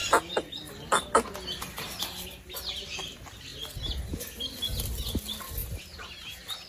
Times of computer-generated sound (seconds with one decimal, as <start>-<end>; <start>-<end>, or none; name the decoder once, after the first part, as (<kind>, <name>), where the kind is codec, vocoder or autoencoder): none